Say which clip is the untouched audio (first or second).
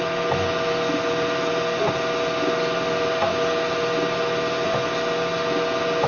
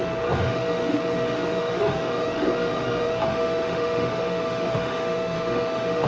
first